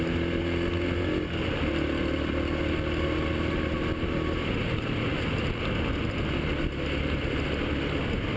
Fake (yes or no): no